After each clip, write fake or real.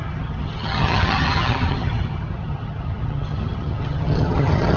fake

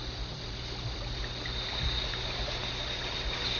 real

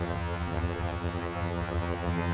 fake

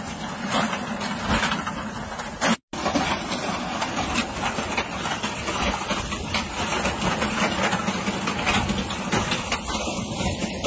real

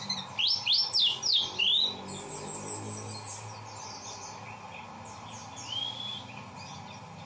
real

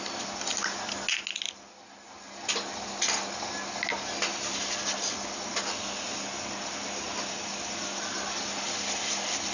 real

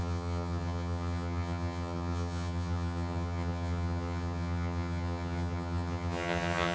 fake